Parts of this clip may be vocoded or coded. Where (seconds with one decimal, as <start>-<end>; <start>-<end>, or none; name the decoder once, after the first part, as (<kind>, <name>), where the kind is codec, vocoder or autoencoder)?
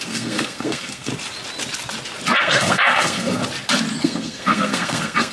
0.0-1.1 (codec, SNAC); 2.4-3.4; 4.0-5.3